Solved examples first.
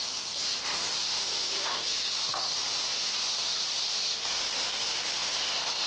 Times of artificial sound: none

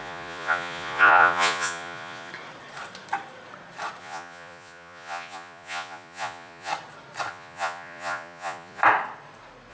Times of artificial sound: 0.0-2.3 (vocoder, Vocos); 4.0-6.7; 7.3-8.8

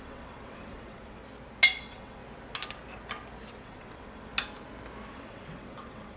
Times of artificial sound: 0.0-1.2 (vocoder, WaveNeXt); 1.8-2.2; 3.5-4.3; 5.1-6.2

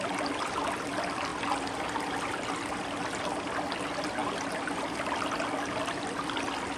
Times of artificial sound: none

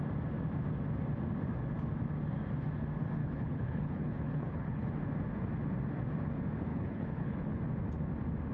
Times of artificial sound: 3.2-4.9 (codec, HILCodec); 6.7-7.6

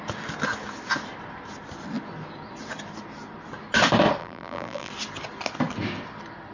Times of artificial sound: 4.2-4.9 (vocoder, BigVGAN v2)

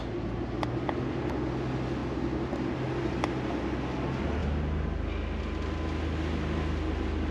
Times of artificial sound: none

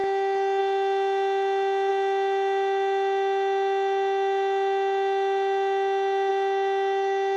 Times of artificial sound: none